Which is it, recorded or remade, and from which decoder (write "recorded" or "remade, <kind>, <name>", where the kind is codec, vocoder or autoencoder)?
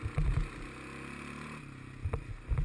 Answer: recorded